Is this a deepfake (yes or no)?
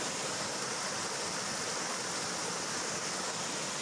no